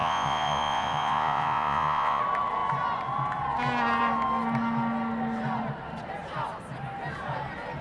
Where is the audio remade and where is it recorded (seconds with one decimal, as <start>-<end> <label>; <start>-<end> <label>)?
0.0-2.2 remade; 2.2-7.8 recorded